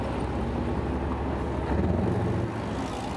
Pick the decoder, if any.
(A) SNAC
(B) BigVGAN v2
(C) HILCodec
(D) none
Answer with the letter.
D